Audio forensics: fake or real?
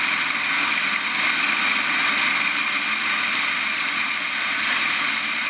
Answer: real